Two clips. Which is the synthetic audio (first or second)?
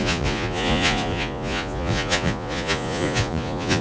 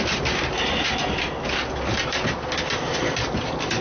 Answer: first